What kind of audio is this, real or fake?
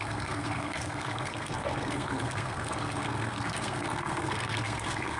fake